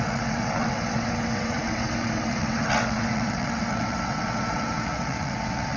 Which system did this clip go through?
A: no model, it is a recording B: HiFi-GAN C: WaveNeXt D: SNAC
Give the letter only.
C